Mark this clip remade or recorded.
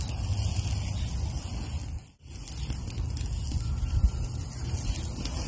recorded